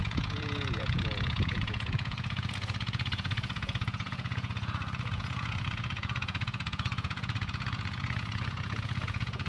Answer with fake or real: fake